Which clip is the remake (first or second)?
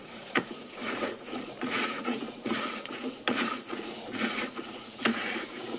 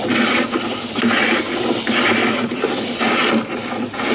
first